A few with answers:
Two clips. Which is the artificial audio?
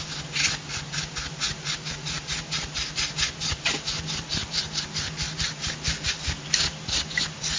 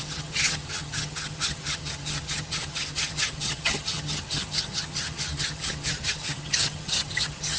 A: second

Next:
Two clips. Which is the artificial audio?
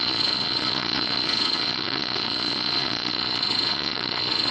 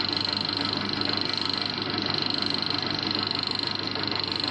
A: first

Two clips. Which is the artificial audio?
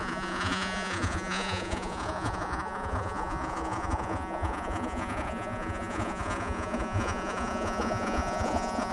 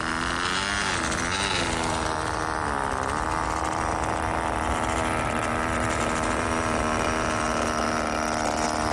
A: first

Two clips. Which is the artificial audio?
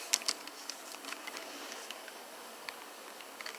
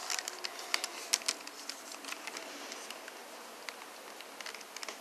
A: first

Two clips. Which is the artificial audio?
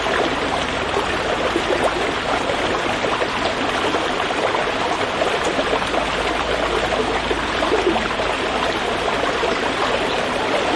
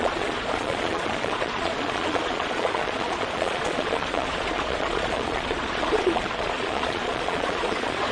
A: second